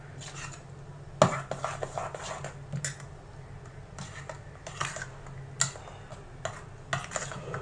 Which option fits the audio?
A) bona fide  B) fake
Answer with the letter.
A